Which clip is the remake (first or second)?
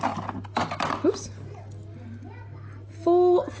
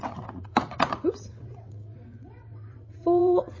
second